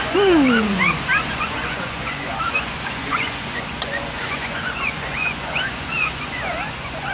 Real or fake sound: fake